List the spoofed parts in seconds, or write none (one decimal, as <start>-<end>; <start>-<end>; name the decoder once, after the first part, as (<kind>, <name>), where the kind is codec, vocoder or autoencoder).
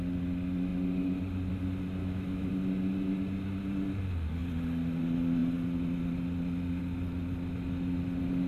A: 2.0-2.5 (autoencoder, DAC-VAE)